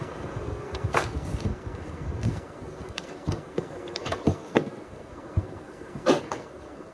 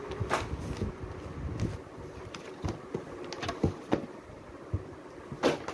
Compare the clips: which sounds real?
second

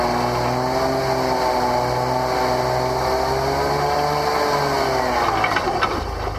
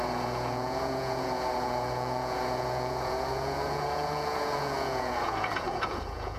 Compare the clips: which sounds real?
first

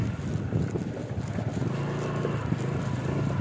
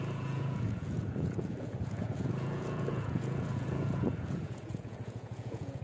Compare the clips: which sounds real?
first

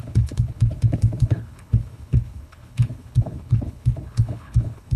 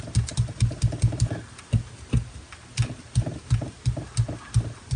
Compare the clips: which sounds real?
second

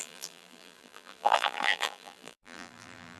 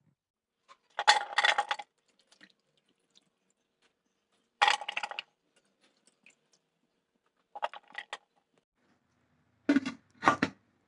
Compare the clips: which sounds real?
second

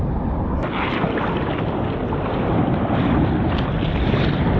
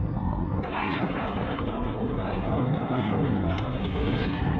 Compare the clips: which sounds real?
first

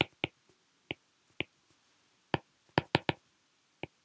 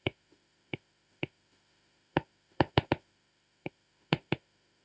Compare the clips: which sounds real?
first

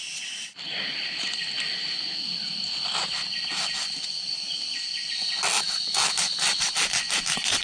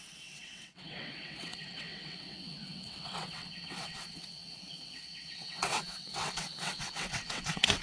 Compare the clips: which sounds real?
first